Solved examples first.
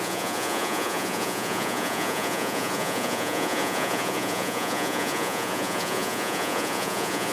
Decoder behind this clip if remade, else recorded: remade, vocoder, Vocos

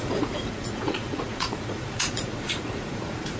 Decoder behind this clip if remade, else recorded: remade, vocoder, Vocos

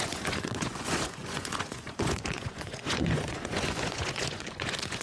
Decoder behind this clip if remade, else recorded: remade, vocoder, Vocos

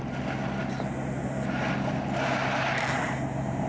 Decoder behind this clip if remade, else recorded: recorded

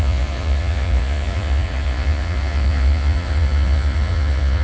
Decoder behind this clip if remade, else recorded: remade, vocoder, Vocos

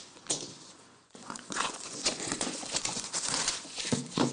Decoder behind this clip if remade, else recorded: remade, vocoder, Vocos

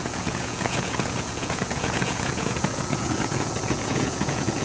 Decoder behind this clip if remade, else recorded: remade, vocoder, Vocos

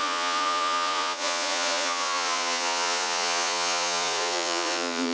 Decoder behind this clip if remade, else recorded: remade, vocoder, Vocos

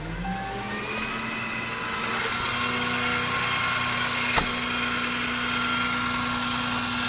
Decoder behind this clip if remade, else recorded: recorded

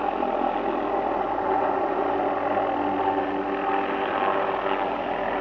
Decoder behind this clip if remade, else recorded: recorded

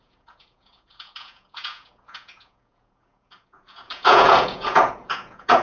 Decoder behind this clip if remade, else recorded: remade, vocoder, Vocos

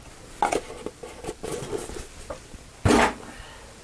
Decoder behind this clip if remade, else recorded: recorded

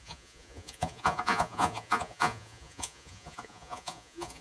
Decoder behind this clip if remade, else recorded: remade, vocoder, Vocos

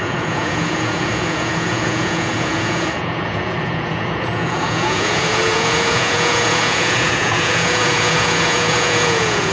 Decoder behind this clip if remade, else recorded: remade, vocoder, Vocos